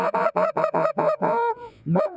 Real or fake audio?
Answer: fake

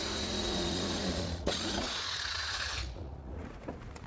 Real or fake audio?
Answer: fake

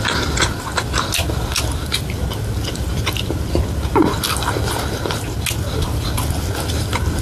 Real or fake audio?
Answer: real